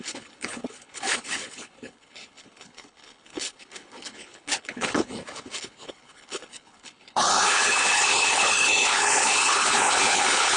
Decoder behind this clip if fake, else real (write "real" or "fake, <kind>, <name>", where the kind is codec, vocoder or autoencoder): fake, codec, HILCodec